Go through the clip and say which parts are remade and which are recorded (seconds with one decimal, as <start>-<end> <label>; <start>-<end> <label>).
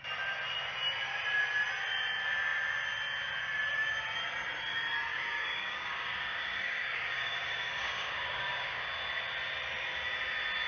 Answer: 0.0-5.1 recorded; 5.1-8.8 remade; 8.8-10.7 recorded